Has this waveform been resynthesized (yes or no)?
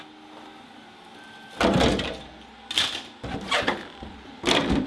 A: no